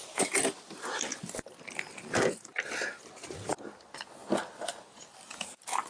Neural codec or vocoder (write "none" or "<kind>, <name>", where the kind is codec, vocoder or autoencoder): none